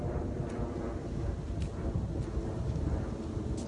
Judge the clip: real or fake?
real